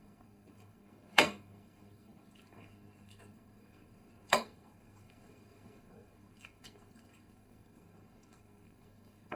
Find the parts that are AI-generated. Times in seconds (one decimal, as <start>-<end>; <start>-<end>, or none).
0.0-9.3